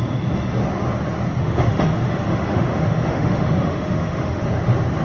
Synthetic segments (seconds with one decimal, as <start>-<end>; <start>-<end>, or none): 1.4-4.4